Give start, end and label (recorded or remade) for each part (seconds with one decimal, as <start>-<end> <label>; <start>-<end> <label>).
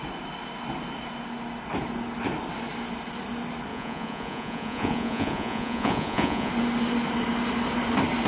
0.0-3.7 recorded; 3.7-6.5 remade; 6.5-8.3 recorded